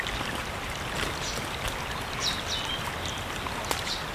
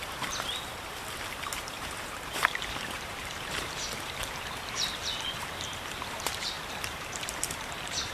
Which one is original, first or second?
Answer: first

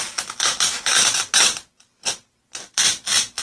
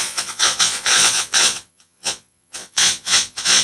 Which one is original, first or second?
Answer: first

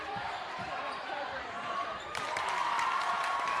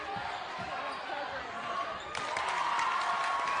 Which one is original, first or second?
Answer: second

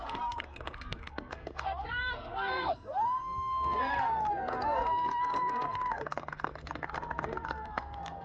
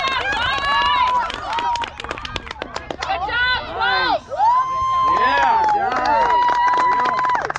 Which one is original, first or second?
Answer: second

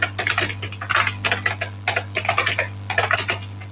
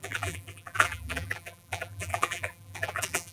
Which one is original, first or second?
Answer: first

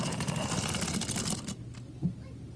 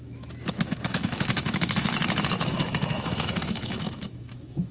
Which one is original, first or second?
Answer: first